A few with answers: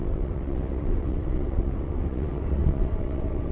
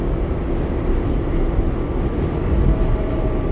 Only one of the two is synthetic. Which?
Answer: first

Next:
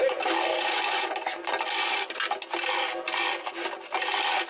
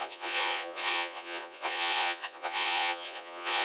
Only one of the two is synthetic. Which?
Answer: second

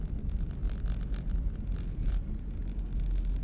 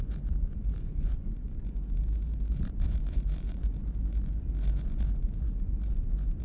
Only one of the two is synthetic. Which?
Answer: second